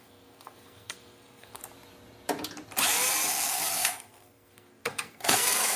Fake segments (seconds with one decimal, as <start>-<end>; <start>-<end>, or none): 0.0-1.6; 3.5-5.8

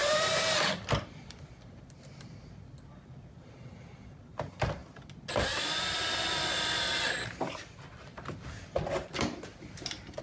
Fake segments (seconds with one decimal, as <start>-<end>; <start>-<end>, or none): 0.0-3.7; 4.8-10.2

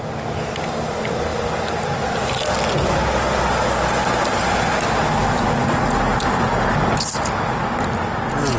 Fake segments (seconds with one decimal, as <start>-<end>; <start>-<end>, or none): none

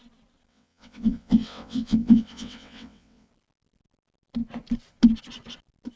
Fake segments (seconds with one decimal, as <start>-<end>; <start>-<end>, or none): 0.5-3.3

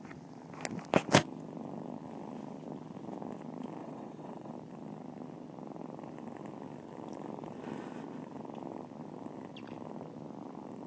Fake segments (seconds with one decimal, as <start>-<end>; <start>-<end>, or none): 3.8-4.5

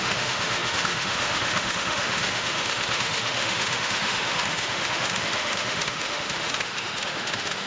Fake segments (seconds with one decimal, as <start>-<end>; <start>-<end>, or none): 0.0-7.7

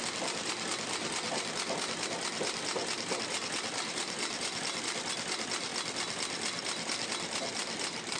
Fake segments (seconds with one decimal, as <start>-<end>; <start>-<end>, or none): none